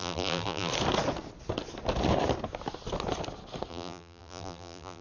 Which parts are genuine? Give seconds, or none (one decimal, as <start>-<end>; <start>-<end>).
0.7-3.7